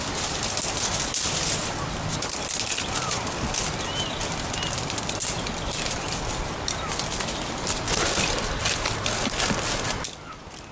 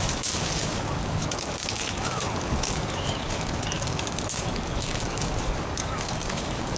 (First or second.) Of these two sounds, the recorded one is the first